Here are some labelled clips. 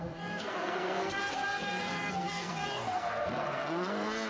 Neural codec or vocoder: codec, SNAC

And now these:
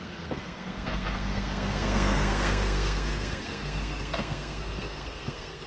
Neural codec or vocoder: codec, SNAC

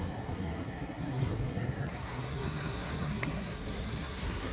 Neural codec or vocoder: codec, SNAC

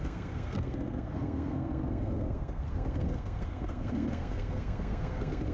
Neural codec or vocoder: codec, SNAC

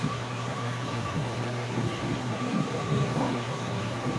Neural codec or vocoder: codec, SNAC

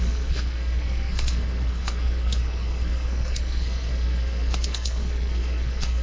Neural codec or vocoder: codec, SNAC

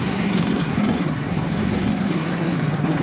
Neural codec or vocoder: codec, SNAC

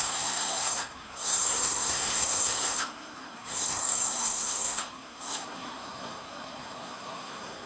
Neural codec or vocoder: codec, SNAC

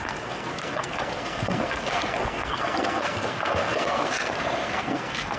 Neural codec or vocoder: codec, SNAC